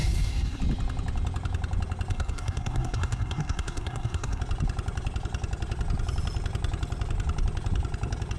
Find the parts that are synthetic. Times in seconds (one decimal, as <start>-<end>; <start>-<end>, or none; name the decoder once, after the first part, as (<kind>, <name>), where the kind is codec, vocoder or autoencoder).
0.0-0.6 (codec, SNAC); 2.1-4.4